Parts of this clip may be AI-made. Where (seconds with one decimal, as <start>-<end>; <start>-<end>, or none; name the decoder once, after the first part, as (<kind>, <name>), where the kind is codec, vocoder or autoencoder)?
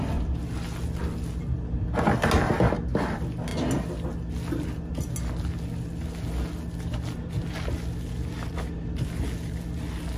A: none